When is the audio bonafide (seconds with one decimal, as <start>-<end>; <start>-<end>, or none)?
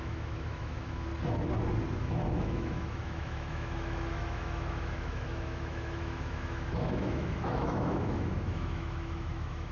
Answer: 1.1-2.0